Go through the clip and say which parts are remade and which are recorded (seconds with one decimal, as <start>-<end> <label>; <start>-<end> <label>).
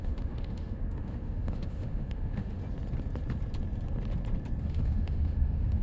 0.0-2.6 remade; 2.6-4.6 recorded; 4.6-5.8 remade